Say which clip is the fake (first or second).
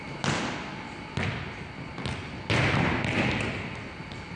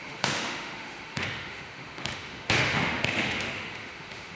second